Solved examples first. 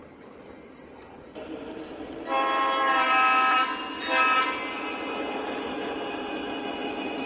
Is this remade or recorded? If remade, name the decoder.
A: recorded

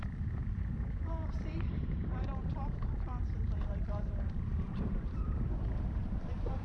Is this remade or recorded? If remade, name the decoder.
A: remade, vocoder, BigVGAN v2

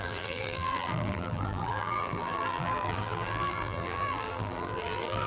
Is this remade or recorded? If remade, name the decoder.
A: remade, vocoder, BigVGAN v2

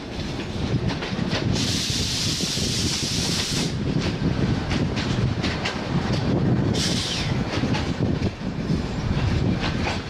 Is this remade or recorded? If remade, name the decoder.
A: remade, vocoder, BigVGAN v2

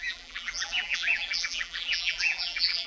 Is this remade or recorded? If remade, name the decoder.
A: remade, vocoder, BigVGAN v2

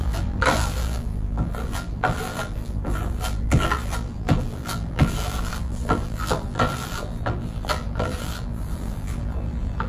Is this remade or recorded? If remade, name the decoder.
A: remade, vocoder, BigVGAN v2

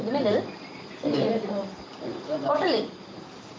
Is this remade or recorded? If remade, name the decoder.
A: remade, vocoder, BigVGAN v2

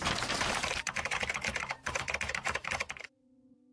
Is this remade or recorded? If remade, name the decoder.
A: remade, vocoder, BigVGAN v2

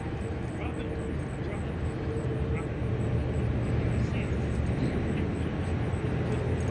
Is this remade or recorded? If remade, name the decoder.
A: recorded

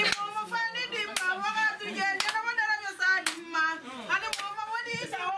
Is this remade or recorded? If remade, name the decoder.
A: recorded